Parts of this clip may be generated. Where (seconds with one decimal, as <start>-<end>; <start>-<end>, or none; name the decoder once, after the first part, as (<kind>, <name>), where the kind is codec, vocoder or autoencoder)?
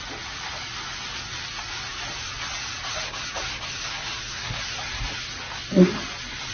none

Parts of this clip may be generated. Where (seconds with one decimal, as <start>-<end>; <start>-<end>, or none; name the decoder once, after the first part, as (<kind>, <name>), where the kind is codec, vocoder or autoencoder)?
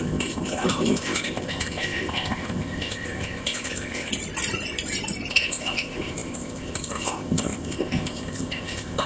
0.0-4.1 (codec, ZipCodec); 5.3-9.1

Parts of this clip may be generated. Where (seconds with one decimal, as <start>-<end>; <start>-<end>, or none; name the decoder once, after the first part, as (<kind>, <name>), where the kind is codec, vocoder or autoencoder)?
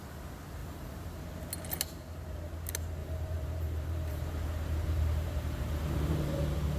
0.6-1.2 (vocoder, BigVGAN v2); 3.0-6.8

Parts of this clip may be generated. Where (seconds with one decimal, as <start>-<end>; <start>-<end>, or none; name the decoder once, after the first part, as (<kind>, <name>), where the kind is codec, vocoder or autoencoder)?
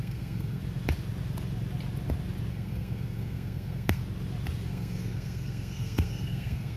0.0-0.6 (codec, SNAC); 2.5-4.0; 4.7-6.8